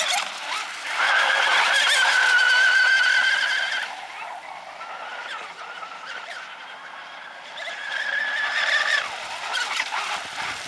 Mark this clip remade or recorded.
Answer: recorded